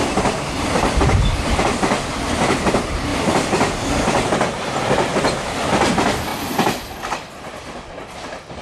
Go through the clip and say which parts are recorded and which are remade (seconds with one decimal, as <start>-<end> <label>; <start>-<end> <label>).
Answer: 0.0-1.6 remade; 1.6-3.1 recorded; 3.1-3.7 remade; 3.7-5.1 recorded; 5.1-5.7 remade; 5.7-8.6 recorded